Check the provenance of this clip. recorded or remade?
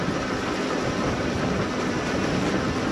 recorded